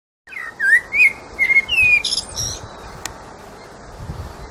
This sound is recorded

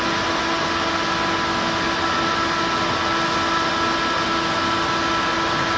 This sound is recorded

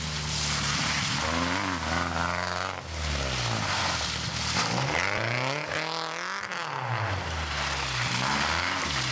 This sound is recorded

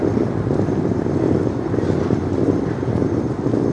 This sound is recorded